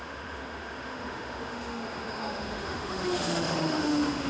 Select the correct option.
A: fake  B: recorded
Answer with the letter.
A